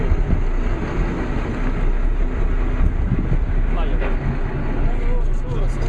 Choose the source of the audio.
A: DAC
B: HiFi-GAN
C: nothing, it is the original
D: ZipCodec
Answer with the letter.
C